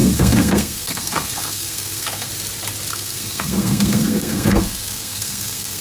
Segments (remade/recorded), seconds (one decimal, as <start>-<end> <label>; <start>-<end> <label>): 0.0-2.3 remade; 2.3-2.9 recorded; 2.9-5.8 remade